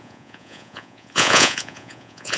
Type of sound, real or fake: fake